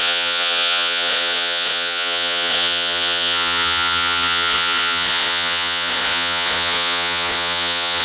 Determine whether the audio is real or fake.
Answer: fake